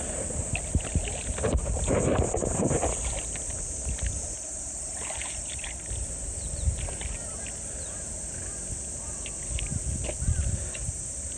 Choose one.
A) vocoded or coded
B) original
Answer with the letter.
A